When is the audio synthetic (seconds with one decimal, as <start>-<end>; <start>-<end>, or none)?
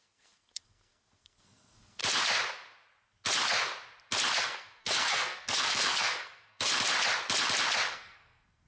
0.0-2.0; 4.4-6.7; 7.9-8.7